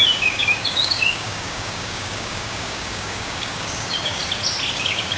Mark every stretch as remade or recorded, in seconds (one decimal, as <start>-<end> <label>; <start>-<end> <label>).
0.0-4.2 remade; 4.2-4.7 recorded; 4.7-5.2 remade